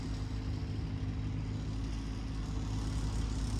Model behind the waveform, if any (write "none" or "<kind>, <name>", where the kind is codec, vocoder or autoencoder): none